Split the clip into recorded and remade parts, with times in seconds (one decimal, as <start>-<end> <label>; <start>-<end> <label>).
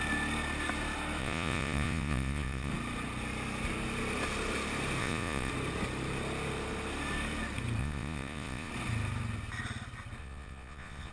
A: 0.0-1.2 recorded; 1.2-2.7 remade; 2.7-5.0 recorded; 5.0-5.5 remade; 5.5-7.8 recorded; 7.8-8.7 remade; 8.7-10.2 recorded; 10.2-11.1 remade